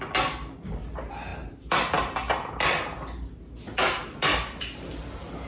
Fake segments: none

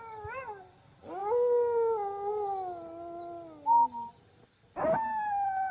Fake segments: none

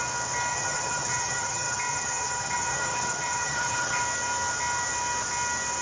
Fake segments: 0.5-4.0

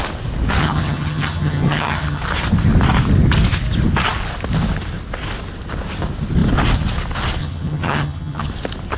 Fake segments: 0.6-2.2; 7.4-8.5

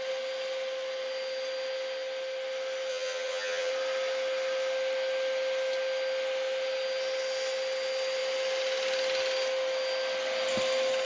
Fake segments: 2.9-3.7

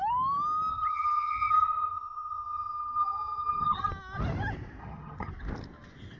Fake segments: 0.7-3.9; 4.8-5.3